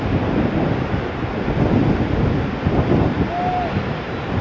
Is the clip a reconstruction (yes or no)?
no